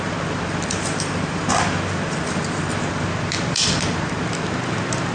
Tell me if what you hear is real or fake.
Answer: fake